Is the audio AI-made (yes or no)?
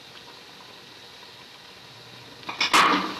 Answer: no